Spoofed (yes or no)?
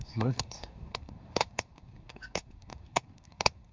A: yes